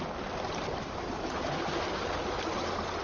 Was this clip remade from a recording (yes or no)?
no